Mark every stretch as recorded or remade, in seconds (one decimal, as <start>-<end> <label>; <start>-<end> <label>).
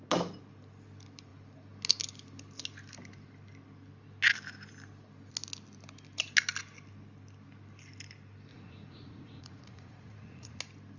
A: 0.0-8.5 recorded; 8.5-10.6 remade; 10.6-11.0 recorded